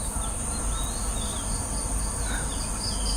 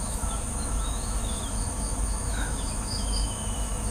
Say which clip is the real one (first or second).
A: first